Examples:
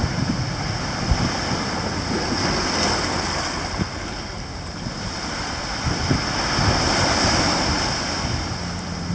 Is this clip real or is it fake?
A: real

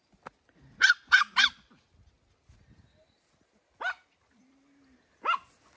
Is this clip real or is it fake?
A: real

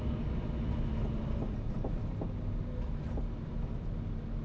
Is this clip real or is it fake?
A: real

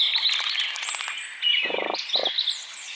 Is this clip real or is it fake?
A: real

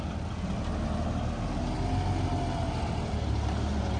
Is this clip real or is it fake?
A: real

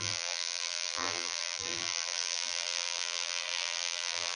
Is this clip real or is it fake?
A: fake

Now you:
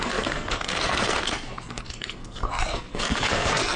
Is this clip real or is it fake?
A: fake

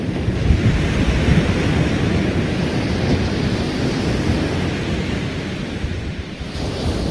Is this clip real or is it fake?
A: real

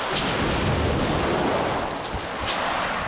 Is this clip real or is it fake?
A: real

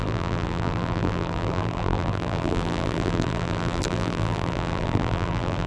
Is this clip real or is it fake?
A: fake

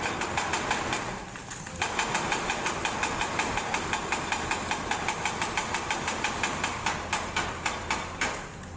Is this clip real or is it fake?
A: real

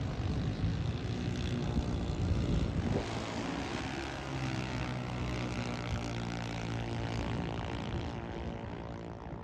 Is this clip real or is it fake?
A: real